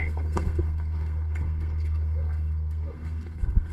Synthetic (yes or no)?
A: yes